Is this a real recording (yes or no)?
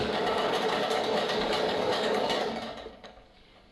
no